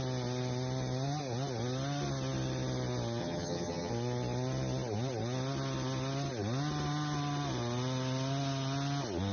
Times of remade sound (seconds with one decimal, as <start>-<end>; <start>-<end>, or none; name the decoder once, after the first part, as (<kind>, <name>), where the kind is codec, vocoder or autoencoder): 3.2-3.9 (vocoder, HiFi-GAN)